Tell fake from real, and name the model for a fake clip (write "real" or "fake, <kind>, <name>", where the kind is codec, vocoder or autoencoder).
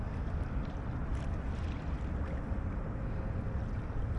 real